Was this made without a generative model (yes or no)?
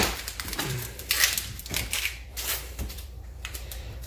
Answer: no